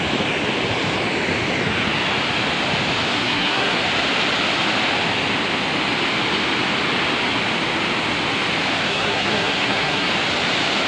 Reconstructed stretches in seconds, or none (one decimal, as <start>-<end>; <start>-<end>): 3.1-3.8; 8.9-10.1